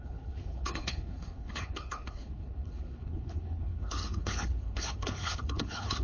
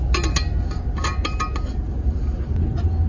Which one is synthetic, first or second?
first